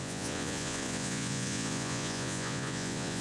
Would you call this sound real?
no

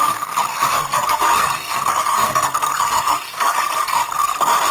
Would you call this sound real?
no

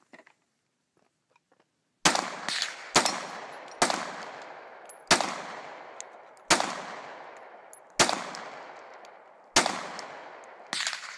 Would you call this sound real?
yes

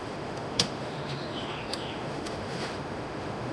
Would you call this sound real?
no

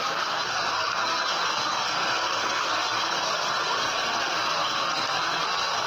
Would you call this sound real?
no